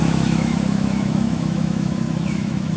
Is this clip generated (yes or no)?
yes